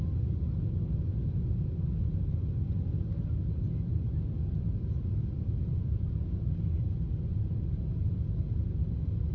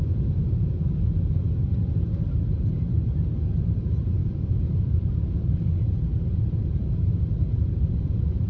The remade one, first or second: second